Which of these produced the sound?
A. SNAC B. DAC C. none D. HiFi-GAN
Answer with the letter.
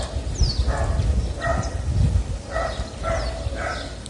C